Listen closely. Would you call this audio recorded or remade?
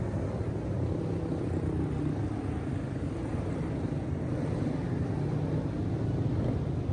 recorded